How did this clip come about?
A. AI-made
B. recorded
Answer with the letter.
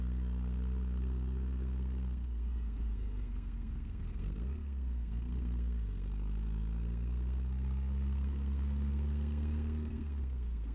A